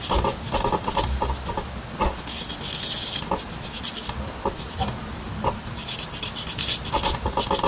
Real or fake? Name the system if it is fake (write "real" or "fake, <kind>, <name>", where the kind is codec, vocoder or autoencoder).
real